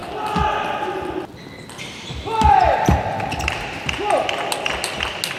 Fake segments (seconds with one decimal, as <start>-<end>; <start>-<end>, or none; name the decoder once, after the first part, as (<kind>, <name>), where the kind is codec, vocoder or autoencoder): none